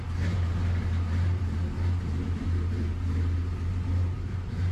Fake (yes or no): no